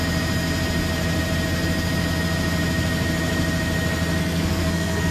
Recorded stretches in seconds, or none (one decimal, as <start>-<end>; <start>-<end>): 0.0-4.2